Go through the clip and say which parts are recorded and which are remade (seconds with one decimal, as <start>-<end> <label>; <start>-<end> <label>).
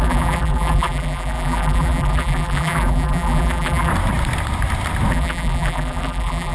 0.0-3.9 remade; 3.9-5.1 recorded; 5.1-6.5 remade